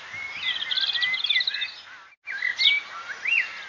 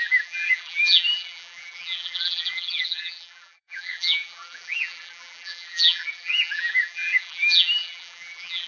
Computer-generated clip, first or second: second